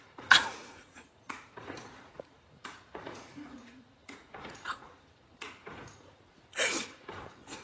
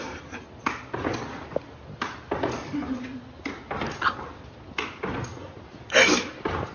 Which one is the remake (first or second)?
first